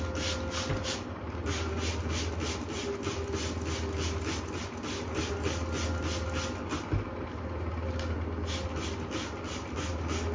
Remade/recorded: recorded